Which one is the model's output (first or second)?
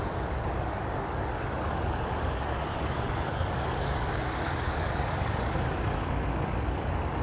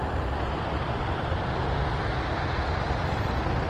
first